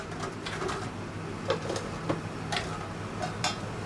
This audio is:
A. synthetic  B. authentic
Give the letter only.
B